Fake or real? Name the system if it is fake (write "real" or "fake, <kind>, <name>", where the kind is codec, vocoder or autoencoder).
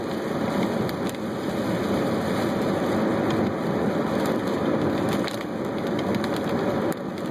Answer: real